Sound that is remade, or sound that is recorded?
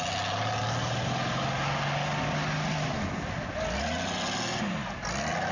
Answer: recorded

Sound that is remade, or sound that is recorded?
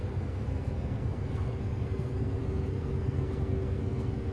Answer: remade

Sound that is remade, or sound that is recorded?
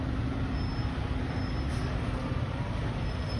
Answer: recorded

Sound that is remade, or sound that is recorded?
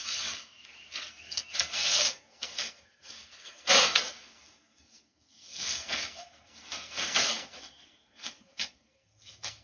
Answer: remade